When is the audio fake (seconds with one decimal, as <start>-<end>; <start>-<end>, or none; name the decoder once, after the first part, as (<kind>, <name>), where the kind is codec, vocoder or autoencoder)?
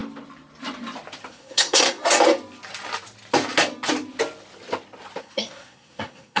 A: 1.3-2.0 (codec, SNAC); 5.2-6.4